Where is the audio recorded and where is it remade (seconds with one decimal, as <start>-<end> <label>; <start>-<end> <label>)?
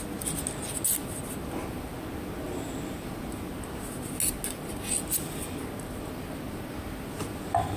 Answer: 0.0-7.8 recorded